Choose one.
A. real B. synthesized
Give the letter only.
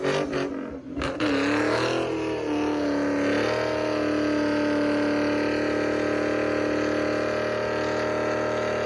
A